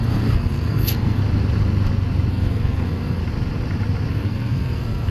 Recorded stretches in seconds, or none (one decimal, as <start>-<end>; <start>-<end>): 1.2-2.3; 3.2-4.1